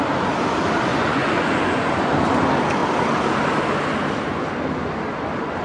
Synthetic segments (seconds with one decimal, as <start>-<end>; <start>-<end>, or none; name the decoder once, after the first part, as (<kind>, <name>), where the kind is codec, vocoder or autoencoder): 0.9-2.1 (vocoder, Vocos)